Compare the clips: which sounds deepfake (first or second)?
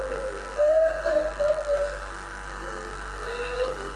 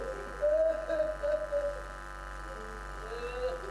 first